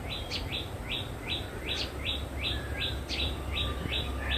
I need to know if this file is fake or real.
real